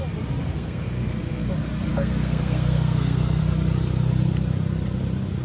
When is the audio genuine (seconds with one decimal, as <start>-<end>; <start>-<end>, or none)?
0.0-0.5; 1.5-1.9; 3.4-5.4